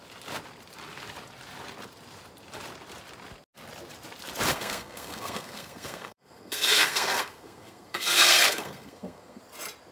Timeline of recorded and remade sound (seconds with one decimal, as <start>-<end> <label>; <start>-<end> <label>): 0.0-4.5 recorded; 4.5-9.4 remade; 9.4-9.9 recorded